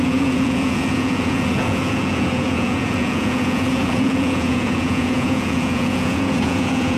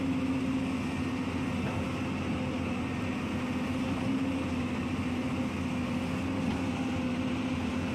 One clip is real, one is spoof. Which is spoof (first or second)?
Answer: first